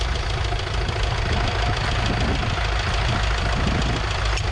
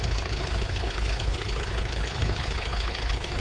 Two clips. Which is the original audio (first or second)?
first